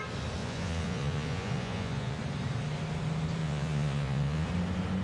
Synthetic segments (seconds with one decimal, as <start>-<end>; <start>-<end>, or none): 0.4-2.2; 3.4-4.5